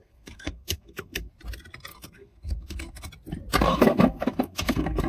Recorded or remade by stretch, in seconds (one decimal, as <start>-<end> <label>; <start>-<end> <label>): 0.0-1.3 remade; 1.3-1.9 recorded; 1.9-3.1 remade; 3.1-3.7 recorded; 3.7-5.1 remade